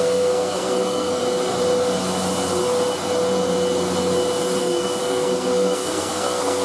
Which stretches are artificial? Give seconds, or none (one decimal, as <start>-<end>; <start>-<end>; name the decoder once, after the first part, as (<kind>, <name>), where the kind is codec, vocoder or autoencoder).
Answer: 0.0-1.2 (codec, SNAC); 4.6-6.6